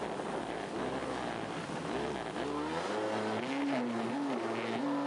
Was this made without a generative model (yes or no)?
yes